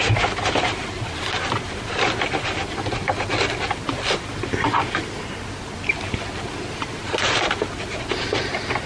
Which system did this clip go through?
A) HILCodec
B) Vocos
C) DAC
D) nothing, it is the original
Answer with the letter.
D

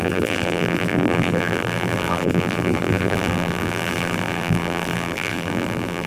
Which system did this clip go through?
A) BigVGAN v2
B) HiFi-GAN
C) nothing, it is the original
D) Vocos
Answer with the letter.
A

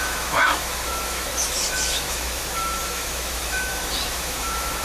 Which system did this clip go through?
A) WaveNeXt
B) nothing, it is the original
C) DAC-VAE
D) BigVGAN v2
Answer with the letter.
C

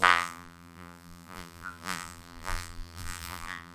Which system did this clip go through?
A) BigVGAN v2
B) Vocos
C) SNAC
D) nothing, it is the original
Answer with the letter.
A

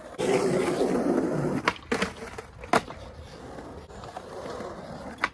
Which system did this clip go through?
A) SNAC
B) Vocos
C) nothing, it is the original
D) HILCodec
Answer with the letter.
C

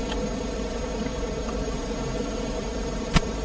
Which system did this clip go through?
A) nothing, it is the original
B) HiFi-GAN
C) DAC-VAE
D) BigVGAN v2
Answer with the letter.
D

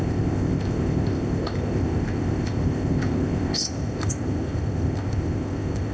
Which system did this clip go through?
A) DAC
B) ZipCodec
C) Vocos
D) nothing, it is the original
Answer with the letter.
B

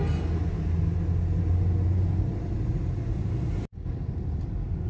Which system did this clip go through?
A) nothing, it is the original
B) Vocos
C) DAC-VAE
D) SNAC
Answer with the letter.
A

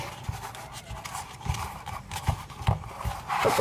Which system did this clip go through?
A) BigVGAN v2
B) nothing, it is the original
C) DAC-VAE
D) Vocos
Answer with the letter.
B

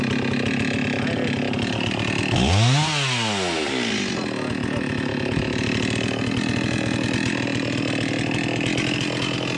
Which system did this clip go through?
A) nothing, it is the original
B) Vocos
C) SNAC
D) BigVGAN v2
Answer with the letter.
A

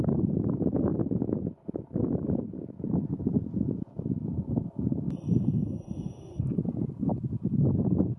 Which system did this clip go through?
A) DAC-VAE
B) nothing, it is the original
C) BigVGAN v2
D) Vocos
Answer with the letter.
B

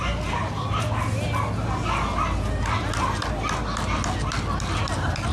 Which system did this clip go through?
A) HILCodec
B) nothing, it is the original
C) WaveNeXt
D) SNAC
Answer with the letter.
B